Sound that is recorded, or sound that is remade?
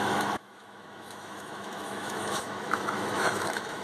remade